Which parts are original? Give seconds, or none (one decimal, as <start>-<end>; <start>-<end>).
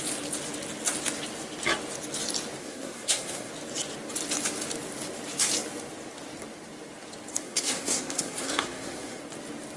0.0-2.6; 3.5-7.3; 9.2-9.8